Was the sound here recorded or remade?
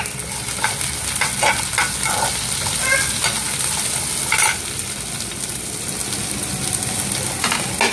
recorded